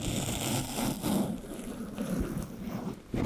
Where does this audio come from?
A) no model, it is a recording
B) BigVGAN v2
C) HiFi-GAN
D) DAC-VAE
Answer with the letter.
A